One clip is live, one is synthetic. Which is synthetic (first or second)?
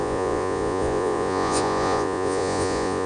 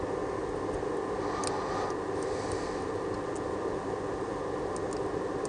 first